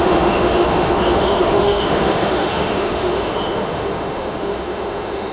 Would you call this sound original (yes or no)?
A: no